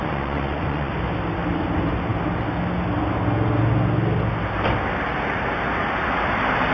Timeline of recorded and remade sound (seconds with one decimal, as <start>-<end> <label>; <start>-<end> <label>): 0.0-0.9 remade; 0.9-6.7 recorded